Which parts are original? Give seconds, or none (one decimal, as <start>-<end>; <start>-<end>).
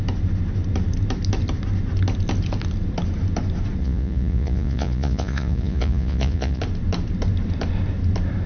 0.0-3.8; 6.6-8.5